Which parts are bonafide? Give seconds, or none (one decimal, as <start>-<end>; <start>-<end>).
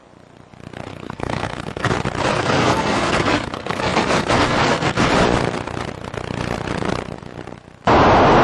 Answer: 0.0-0.9; 1.9-2.3; 5.1-8.4